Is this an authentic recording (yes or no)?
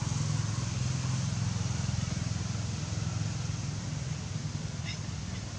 yes